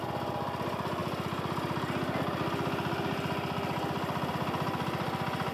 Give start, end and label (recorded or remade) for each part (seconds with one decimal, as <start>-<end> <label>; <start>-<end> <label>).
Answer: 0.0-5.5 recorded